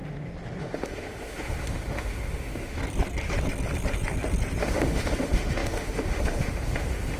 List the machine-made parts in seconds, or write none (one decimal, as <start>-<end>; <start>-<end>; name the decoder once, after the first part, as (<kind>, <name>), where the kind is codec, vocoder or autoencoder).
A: 0.6-2.8 (autoencoder, DAC-VAE); 4.6-7.2